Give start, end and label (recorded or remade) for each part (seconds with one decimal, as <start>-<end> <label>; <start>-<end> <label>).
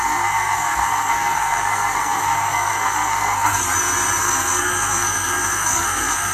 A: 0.0-3.6 remade; 3.6-4.2 recorded; 4.2-6.3 remade